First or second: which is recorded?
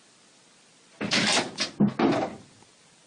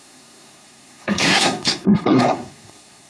first